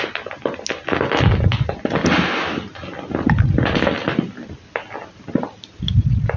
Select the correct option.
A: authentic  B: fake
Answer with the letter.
A